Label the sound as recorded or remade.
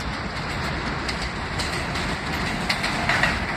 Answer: recorded